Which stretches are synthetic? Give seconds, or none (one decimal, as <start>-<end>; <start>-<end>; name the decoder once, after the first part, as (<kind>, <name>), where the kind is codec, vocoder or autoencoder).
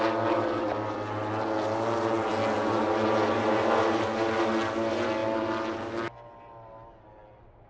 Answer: none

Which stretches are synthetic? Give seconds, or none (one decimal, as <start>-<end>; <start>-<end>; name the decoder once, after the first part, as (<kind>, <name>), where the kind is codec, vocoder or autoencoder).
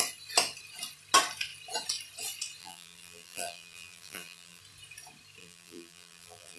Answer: 2.6-4.6 (vocoder, BigVGAN v2); 5.4-6.6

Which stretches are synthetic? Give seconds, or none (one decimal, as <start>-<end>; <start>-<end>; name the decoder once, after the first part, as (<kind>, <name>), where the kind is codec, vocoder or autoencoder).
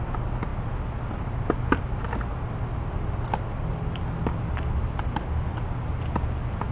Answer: none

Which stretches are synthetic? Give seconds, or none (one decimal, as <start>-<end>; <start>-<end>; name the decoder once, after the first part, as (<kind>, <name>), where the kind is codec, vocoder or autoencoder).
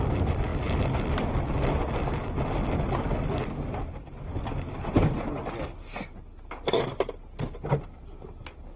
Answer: none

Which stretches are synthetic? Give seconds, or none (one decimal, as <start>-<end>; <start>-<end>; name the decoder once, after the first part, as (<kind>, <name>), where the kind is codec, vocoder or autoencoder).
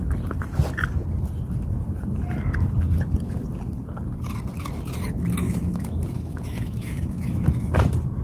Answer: 5.4-7.7 (autoencoder, DAC-VAE)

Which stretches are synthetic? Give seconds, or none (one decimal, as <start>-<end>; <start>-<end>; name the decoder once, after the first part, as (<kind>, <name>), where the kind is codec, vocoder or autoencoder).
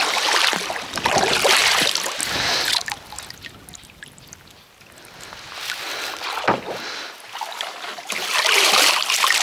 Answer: none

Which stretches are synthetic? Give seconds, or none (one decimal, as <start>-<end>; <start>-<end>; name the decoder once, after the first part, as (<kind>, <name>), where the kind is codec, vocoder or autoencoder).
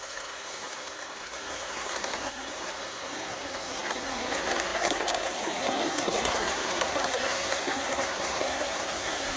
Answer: 0.0-9.4 (codec, SNAC)